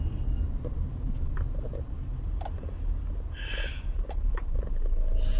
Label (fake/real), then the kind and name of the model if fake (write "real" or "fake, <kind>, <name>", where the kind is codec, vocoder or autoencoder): real